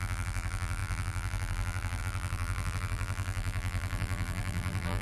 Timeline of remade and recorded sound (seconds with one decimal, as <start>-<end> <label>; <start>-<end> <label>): 0.0-5.0 remade